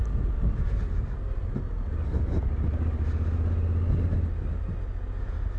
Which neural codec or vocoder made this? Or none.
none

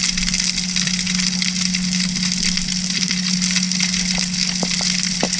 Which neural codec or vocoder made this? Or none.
none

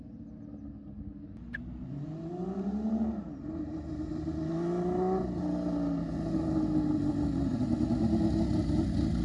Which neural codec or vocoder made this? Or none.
none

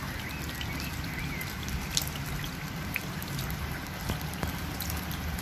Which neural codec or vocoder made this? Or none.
none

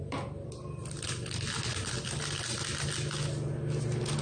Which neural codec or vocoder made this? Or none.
none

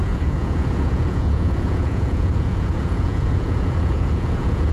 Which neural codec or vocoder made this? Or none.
vocoder, Vocos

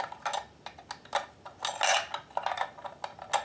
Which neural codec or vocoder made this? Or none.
none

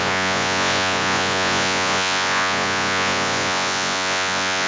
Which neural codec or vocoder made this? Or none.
vocoder, Vocos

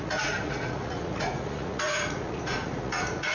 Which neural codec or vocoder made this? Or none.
vocoder, Vocos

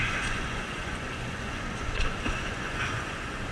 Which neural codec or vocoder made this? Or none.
vocoder, Vocos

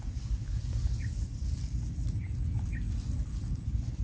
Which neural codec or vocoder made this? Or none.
none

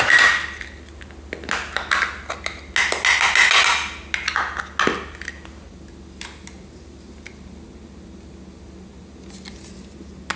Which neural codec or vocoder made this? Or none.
none